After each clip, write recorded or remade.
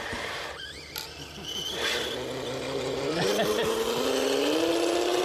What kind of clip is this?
recorded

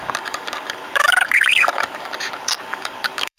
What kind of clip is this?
remade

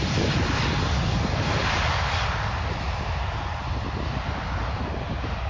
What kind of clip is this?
recorded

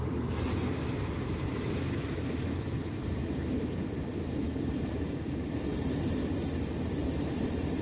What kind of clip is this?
remade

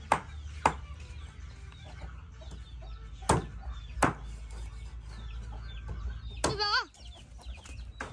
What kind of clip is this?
recorded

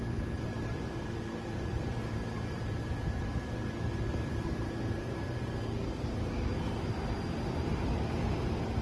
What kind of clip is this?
remade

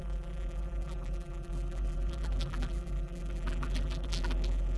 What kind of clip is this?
remade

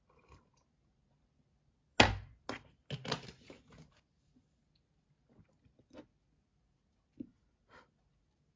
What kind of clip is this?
recorded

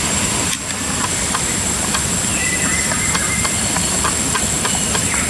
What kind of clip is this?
recorded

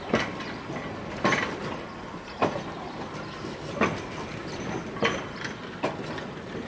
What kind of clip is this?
recorded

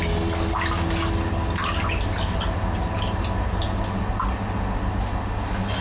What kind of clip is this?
recorded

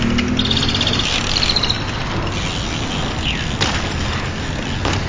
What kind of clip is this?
recorded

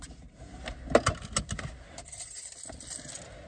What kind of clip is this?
recorded